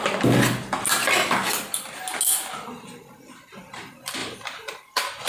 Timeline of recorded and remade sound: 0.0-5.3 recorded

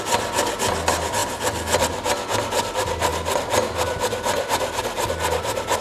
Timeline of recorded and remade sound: 0.0-5.8 recorded

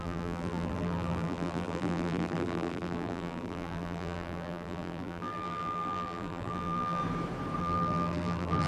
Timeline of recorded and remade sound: 0.0-7.0 remade; 7.0-7.6 recorded; 7.6-8.7 remade

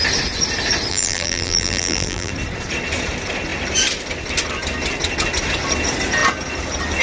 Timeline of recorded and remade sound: 0.0-0.9 recorded; 0.9-2.3 remade; 2.3-7.0 recorded

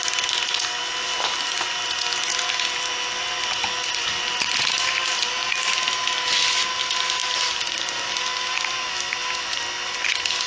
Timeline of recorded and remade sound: 0.0-1.1 recorded; 1.1-1.7 remade; 1.7-7.2 recorded; 7.2-8.1 remade; 8.1-10.5 recorded

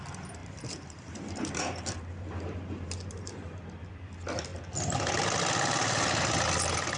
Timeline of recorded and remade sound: 0.0-0.4 recorded; 0.4-3.9 remade; 3.9-7.0 recorded

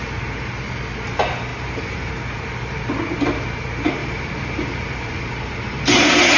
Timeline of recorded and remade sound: 0.0-1.5 recorded; 1.5-2.1 remade; 2.1-4.0 recorded; 4.0-6.4 remade